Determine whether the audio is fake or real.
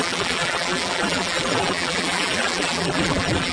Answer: fake